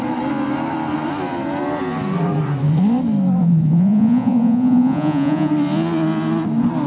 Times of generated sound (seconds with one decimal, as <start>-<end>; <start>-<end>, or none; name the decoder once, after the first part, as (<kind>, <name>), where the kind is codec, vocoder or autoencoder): 3.4-5.5 (vocoder, Vocos)